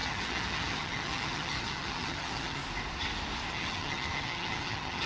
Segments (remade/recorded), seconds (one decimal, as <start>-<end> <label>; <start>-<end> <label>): 0.0-2.6 remade; 2.6-3.5 recorded; 3.5-5.1 remade